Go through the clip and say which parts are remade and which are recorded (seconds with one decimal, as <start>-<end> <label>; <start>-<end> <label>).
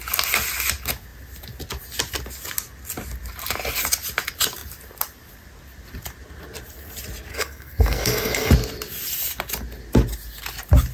0.0-7.3 recorded; 7.3-8.5 remade; 8.5-10.9 recorded